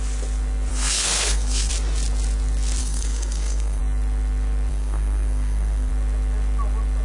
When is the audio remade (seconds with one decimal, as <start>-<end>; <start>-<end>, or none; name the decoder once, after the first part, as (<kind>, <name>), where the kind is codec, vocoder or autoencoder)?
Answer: 0.7-1.7 (codec, SNAC); 2.8-3.8; 4.7-5.9